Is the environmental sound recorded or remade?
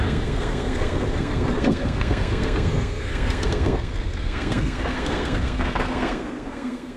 remade